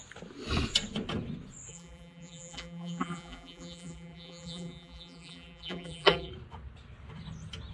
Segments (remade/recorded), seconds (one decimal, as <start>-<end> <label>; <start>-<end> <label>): 0.0-1.7 recorded; 1.7-6.3 remade; 6.3-7.7 recorded